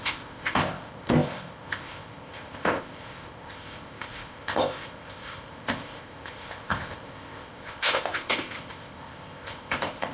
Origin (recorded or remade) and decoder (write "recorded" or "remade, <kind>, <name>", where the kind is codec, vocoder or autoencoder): remade, codec, ZipCodec